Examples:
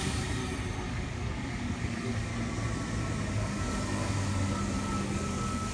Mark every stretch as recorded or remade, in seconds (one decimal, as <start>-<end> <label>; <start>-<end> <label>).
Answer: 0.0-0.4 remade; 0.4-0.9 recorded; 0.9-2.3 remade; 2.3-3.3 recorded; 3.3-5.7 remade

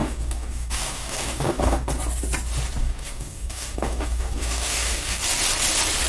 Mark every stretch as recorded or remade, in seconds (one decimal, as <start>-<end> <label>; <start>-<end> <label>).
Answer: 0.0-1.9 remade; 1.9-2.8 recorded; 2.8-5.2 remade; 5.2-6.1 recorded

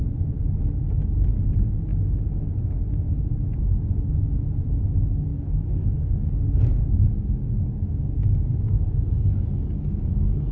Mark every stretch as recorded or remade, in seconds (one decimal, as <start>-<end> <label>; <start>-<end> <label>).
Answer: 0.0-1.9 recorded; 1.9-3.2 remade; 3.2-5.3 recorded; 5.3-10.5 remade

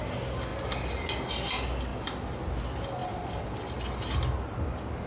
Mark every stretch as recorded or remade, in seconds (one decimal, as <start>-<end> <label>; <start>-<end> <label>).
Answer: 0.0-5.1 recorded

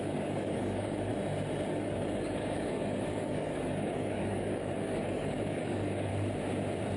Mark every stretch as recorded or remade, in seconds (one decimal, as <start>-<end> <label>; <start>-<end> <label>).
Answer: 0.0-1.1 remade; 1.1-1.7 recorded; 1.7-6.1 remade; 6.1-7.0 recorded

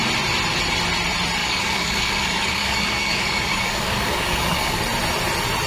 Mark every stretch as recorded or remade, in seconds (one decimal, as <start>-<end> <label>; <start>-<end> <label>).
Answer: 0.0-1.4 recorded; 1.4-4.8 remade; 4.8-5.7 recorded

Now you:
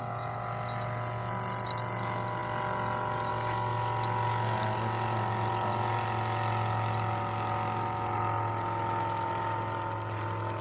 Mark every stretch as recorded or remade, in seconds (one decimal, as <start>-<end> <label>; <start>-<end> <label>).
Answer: 0.0-10.6 recorded

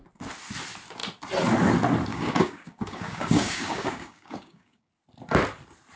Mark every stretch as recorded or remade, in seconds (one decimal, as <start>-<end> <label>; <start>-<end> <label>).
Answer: 0.0-2.1 recorded; 2.1-4.9 remade; 4.9-6.0 recorded